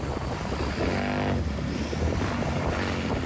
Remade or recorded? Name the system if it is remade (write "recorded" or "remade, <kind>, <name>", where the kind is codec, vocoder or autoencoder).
recorded